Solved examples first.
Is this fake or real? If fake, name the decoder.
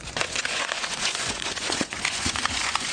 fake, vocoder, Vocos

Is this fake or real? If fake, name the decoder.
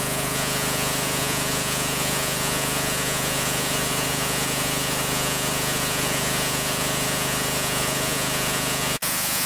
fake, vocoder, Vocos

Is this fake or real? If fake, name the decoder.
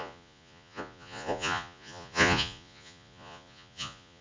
fake, vocoder, Vocos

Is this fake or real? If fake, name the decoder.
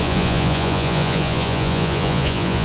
fake, vocoder, Vocos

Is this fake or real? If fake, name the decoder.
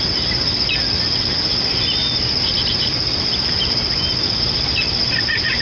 real